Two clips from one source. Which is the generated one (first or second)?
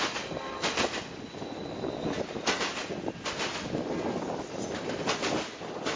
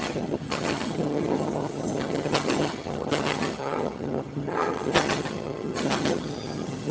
second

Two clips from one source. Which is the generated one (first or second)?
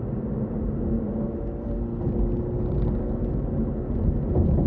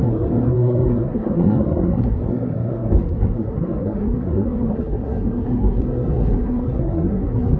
second